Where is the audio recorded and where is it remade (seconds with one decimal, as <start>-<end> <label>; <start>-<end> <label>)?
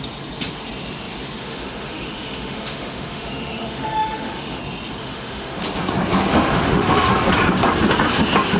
0.0-1.4 recorded; 1.4-4.6 remade; 4.6-5.0 recorded; 5.0-5.6 remade; 5.6-6.3 recorded; 6.3-7.1 remade; 7.1-8.6 recorded